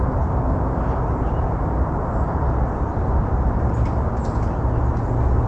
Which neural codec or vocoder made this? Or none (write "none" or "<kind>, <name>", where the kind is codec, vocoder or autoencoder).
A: none